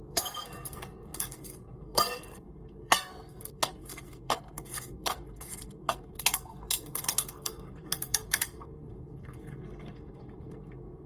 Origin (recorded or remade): remade